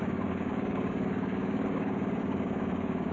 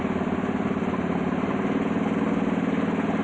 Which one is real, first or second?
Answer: second